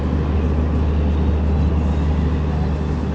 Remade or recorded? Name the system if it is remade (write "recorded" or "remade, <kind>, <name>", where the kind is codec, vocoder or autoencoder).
recorded